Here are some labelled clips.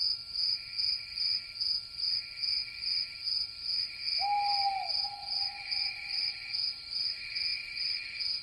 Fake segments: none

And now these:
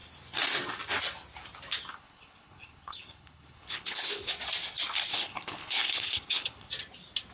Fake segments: 1.9-4.3 (codec, HILCodec); 5.1-6.7

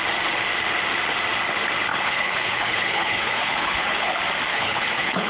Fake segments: 1.9-4.1 (codec, HILCodec); 4.5-5.3

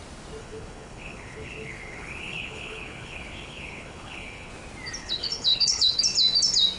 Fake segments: 0.4-4.5 (codec, HILCodec); 5.0-6.0

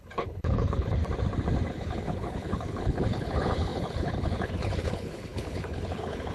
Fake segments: 0.0-1.0 (codec, HILCodec); 1.7-6.3

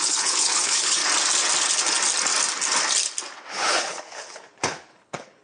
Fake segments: 0.0-1.0 (codec, HILCodec); 3.5-5.4

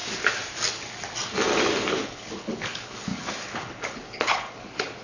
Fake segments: 1.9-5.0 (codec, HILCodec)

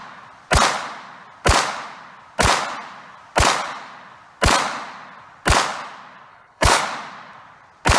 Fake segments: 6.3-6.8 (codec, HILCodec)